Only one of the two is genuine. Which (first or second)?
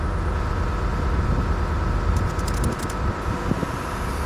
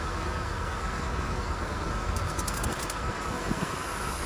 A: first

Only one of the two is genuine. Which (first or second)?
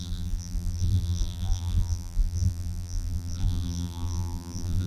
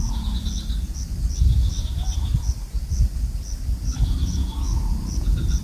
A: second